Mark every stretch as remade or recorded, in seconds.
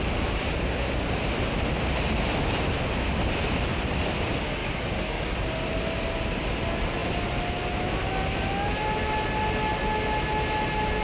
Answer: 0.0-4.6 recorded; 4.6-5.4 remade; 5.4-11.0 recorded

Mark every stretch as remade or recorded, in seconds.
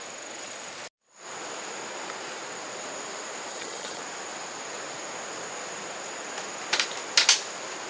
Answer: 0.0-3.5 recorded; 3.5-4.0 remade; 4.0-7.9 recorded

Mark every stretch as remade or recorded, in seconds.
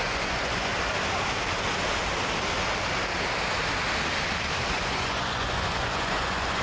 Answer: 0.0-0.7 remade; 0.7-4.7 recorded; 4.7-6.6 remade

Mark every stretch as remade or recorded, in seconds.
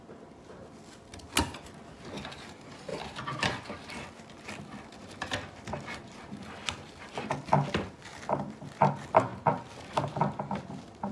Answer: 0.0-2.9 recorded; 2.9-4.2 remade; 4.2-11.1 recorded